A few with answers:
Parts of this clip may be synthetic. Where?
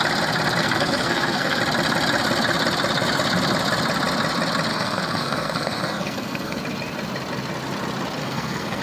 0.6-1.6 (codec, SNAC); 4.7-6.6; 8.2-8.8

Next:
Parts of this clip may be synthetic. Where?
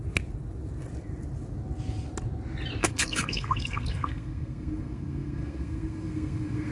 2.8-6.7 (codec, SNAC)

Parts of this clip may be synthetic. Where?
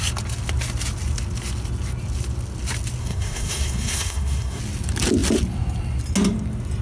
3.0-4.6 (codec, SNAC)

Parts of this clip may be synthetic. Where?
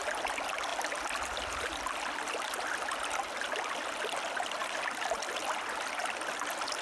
none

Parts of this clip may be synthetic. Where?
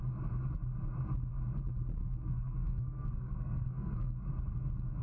2.0-4.1 (codec, SNAC)